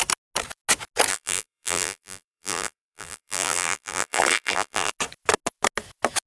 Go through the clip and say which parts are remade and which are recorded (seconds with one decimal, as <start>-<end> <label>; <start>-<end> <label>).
0.0-1.1 recorded; 1.1-4.9 remade; 4.9-6.3 recorded